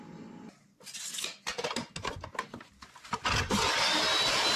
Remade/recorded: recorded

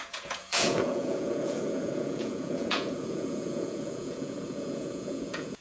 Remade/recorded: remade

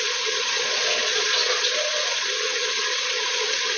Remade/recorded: remade